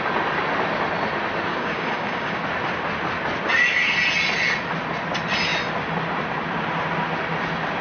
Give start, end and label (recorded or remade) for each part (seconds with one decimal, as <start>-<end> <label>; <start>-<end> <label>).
0.0-1.5 recorded; 1.5-2.4 remade; 2.4-7.8 recorded